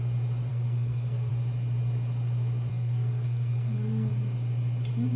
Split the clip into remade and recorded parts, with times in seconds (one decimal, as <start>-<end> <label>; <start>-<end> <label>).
0.0-0.5 recorded; 0.5-1.3 remade; 1.3-2.7 recorded; 2.7-4.1 remade; 4.1-5.2 recorded